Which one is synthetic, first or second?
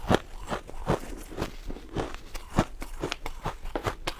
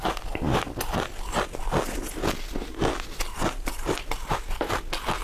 first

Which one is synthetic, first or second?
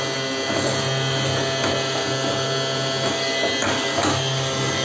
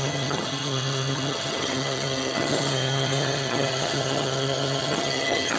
second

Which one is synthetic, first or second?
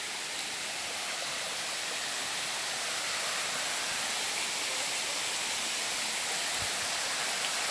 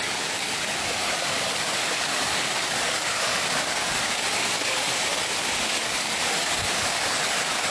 second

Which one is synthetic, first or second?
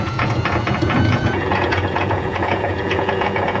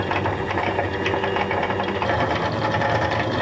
first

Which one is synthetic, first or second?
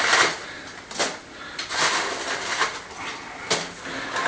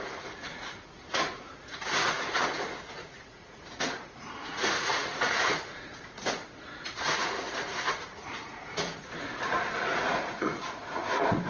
second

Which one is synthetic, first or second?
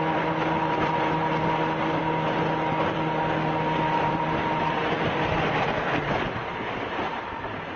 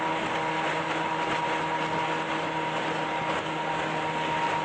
first